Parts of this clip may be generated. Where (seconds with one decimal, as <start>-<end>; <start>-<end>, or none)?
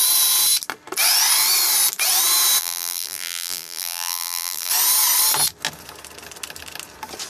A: 2.6-4.7